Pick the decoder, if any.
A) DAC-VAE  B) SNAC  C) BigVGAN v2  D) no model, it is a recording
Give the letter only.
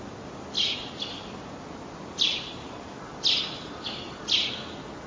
D